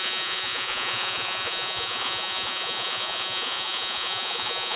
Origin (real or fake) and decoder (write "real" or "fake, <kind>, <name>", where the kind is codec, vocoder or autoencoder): fake, vocoder, Vocos